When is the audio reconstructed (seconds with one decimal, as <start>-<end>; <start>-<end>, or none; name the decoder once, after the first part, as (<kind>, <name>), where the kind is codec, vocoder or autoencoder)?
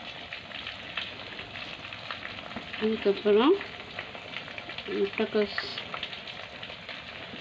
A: none